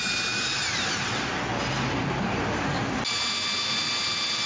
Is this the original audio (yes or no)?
yes